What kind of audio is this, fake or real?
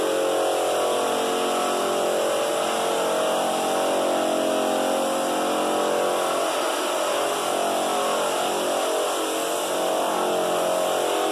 real